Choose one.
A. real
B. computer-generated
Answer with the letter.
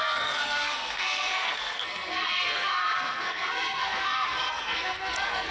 B